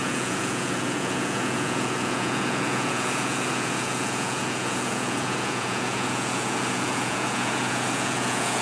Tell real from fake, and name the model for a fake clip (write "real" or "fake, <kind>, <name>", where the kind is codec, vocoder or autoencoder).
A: fake, vocoder, Vocos